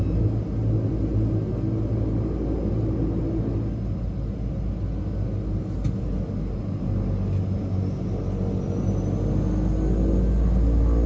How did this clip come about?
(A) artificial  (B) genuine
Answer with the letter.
B